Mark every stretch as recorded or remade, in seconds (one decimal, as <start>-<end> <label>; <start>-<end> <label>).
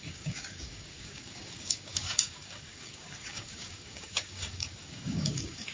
0.0-5.7 remade